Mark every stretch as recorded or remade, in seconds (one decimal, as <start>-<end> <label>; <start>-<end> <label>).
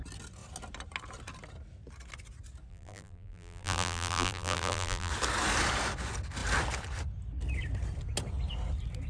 0.0-2.7 recorded; 2.7-5.1 remade; 5.1-9.1 recorded